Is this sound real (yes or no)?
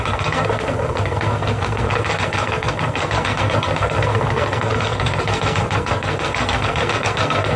no